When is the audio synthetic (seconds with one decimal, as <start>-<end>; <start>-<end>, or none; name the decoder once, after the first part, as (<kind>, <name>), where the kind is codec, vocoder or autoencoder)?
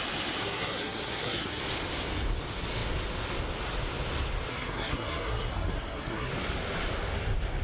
0.4-1.6 (codec, SNAC); 4.5-6.3